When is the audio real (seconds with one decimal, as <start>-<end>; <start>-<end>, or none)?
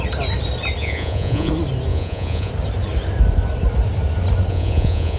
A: 0.0-0.8; 1.5-1.9; 2.5-4.5